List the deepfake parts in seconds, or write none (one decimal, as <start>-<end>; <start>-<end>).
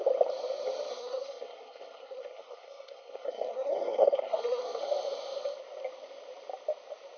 0.9-4.8